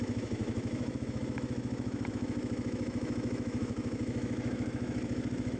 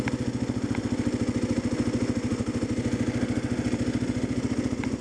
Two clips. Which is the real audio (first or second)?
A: second